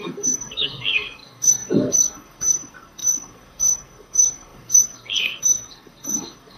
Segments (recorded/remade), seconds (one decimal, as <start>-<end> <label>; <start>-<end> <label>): 0.0-6.6 remade